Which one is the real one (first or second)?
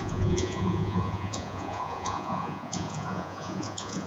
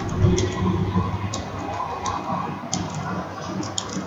second